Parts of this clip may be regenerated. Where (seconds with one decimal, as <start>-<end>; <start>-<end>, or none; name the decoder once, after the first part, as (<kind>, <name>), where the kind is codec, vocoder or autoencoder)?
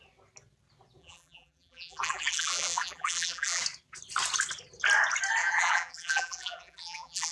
1.0-3.6 (vocoder, BigVGAN v2); 5.4-7.3